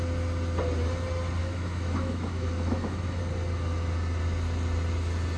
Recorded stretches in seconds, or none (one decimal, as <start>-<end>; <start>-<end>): 0.0-1.4; 3.2-5.4